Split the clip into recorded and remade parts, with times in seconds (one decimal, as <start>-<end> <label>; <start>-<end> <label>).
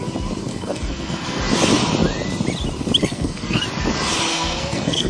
0.0-0.5 recorded; 0.5-1.4 remade; 1.4-3.0 recorded; 3.0-3.6 remade; 3.6-4.3 recorded; 4.3-5.1 remade